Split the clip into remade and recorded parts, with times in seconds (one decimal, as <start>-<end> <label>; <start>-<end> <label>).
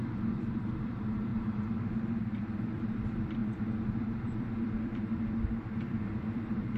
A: 0.0-1.3 remade; 1.3-2.0 recorded; 2.0-6.8 remade